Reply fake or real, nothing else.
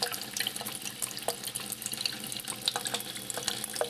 real